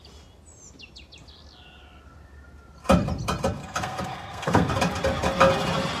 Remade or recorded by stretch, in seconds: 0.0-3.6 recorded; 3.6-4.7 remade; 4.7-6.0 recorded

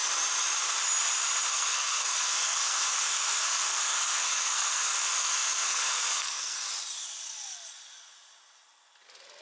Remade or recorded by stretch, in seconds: 0.0-1.5 recorded; 1.5-6.7 remade; 6.7-9.4 recorded

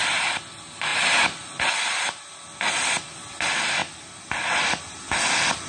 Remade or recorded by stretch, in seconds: 0.0-5.7 recorded

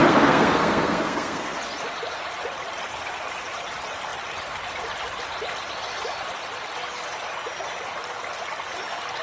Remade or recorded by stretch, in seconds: 0.0-1.6 remade; 1.6-9.2 recorded

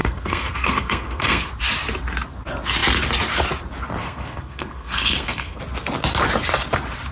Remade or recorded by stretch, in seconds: 0.0-1.5 remade; 1.5-4.0 recorded; 4.0-5.6 remade; 5.6-7.1 recorded

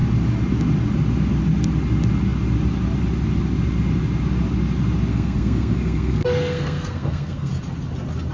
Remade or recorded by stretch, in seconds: 0.0-5.1 recorded; 5.1-7.5 remade; 7.5-8.3 recorded

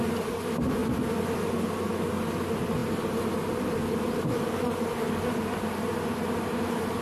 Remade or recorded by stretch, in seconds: 0.0-7.0 recorded

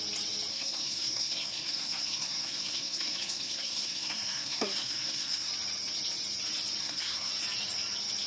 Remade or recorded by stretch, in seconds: 0.0-0.5 recorded; 0.5-5.5 remade; 5.5-6.8 recorded; 6.8-7.3 remade; 7.3-8.3 recorded